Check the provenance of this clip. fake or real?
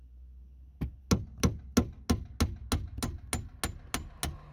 real